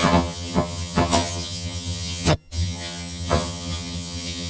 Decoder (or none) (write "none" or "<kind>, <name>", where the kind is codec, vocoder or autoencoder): vocoder, HiFi-GAN